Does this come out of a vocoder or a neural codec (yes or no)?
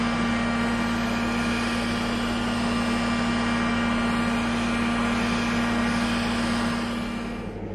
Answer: no